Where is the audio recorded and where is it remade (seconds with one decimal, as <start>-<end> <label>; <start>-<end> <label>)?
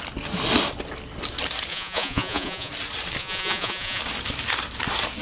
0.0-1.7 recorded; 1.7-2.7 remade; 2.7-3.2 recorded; 3.2-4.0 remade; 4.0-5.2 recorded